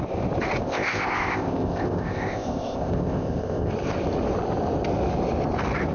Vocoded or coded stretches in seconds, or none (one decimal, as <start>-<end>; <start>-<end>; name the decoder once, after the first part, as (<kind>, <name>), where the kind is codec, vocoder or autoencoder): 0.6-3.7 (codec, ZipCodec)